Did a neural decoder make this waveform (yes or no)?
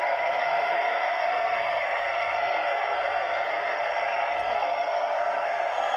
yes